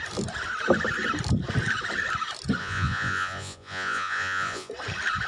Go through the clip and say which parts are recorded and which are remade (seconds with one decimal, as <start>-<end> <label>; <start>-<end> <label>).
0.0-2.6 recorded; 2.6-4.7 remade; 4.7-5.3 recorded